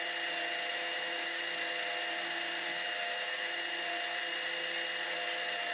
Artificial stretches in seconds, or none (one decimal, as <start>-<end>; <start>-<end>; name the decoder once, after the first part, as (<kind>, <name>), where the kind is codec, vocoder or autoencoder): 0.7-1.4 (autoencoder, DAC-VAE); 2.7-3.6